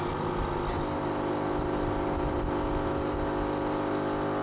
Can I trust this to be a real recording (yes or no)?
yes